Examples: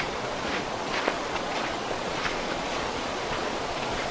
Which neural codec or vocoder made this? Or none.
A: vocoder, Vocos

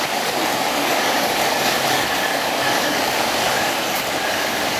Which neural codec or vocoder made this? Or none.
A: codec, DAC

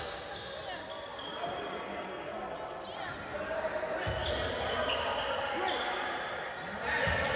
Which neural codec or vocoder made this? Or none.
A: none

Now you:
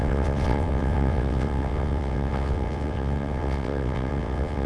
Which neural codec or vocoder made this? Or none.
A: vocoder, WaveNeXt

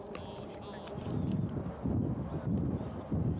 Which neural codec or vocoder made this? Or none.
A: none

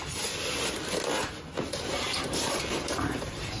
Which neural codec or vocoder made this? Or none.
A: vocoder, BigVGAN v2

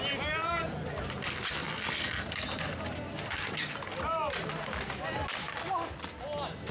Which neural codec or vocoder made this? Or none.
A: none